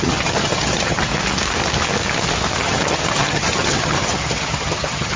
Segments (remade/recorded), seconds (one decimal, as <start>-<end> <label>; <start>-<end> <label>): 0.0-1.1 remade; 1.1-2.6 recorded; 2.6-5.2 remade